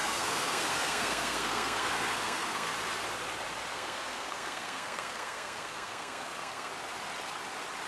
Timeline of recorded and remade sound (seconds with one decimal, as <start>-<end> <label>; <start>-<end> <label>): 0.0-2.7 remade; 2.7-3.7 recorded; 3.7-6.7 remade; 6.7-7.9 recorded

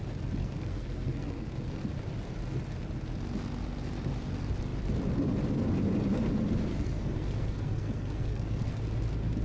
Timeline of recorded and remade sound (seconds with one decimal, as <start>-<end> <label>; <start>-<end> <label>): 0.0-0.4 recorded; 0.4-1.8 remade; 1.8-6.7 recorded; 6.7-8.8 remade; 8.8-9.4 recorded

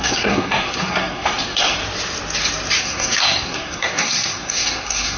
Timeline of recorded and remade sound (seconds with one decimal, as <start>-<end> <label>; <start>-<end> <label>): 0.0-1.8 remade; 1.8-2.8 recorded; 2.8-5.2 remade

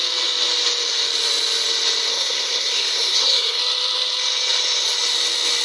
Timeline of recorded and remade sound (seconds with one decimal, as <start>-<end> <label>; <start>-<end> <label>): 0.0-2.1 recorded; 2.1-3.6 remade; 3.6-5.6 recorded

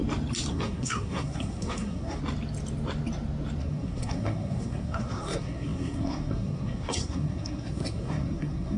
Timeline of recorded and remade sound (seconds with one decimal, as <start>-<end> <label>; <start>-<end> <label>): 0.0-0.5 recorded; 0.5-2.2 remade; 2.2-3.6 recorded; 3.6-8.8 remade

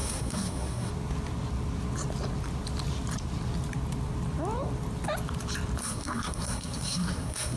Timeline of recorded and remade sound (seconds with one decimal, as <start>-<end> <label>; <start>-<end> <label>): 0.0-0.9 remade; 0.9-5.8 recorded; 5.8-7.6 remade